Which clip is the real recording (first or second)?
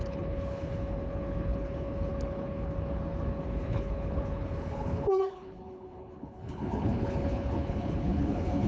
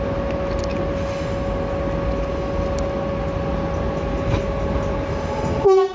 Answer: second